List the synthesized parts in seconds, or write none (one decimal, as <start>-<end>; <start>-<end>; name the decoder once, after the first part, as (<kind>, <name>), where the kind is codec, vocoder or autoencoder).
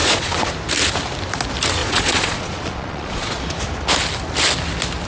0.0-0.5 (vocoder, Vocos); 1.8-3.4